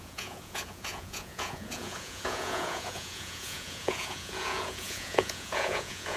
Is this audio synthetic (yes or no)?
yes